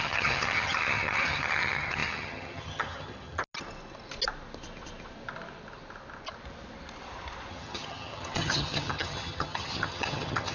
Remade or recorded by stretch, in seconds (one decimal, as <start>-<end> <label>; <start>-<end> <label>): 0.0-3.4 remade; 3.4-7.5 recorded; 7.5-10.5 remade